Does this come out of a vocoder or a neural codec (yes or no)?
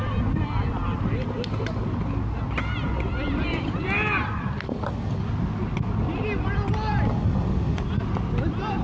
no